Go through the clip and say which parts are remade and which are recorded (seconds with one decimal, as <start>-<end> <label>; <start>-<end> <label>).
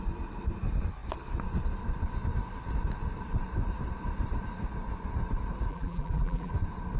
0.0-5.7 recorded; 5.7-6.5 remade; 6.5-7.0 recorded